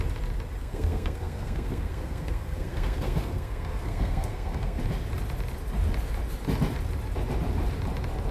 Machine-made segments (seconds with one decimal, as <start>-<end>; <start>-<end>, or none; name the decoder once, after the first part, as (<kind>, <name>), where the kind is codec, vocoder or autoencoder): 0.6-4.8 (codec, SNAC)